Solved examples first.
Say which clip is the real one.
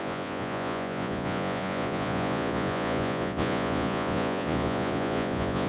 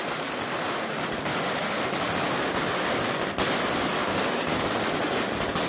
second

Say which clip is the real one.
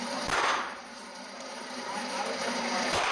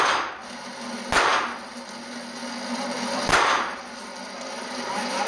second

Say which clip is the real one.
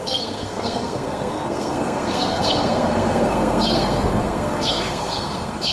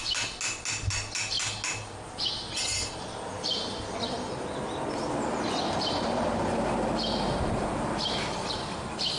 second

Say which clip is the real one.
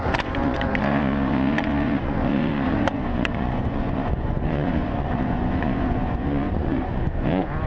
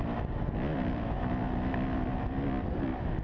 second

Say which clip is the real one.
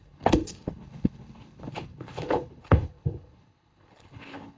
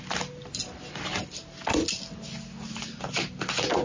second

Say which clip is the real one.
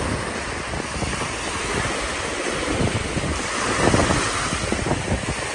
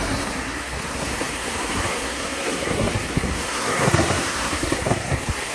first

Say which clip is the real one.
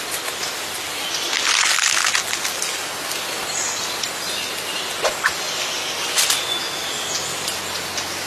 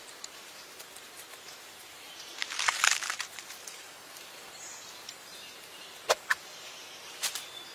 first